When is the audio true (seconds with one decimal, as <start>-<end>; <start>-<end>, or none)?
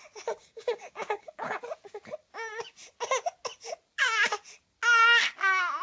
0.0-0.4; 1.6-5.8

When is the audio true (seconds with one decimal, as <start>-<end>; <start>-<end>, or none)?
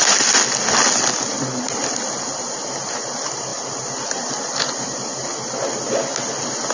0.0-6.7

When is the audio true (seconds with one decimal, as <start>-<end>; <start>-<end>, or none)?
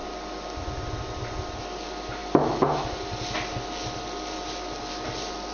0.0-5.5